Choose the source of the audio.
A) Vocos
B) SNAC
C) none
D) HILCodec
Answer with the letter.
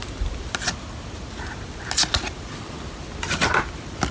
C